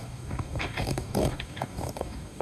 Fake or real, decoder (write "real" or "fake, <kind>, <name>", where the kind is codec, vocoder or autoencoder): fake, codec, DAC